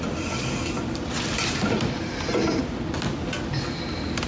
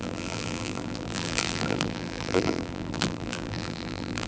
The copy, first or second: second